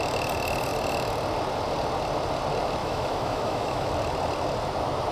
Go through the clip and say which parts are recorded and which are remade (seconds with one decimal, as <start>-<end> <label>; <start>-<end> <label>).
0.0-2.8 recorded; 2.8-3.9 remade; 3.9-5.1 recorded